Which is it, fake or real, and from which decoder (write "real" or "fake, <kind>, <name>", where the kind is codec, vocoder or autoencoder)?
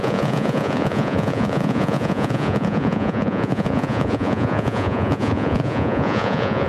fake, vocoder, Vocos